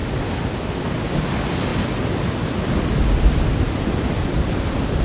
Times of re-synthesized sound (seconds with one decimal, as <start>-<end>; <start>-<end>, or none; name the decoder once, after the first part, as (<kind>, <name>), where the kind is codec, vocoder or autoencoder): none